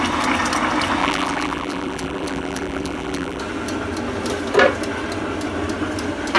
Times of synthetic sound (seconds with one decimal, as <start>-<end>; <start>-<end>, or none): 1.0-3.4